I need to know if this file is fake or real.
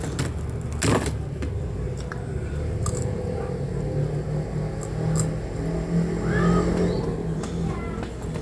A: real